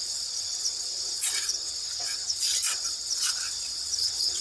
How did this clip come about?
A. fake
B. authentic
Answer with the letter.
A